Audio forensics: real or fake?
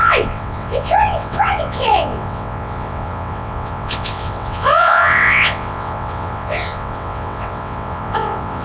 fake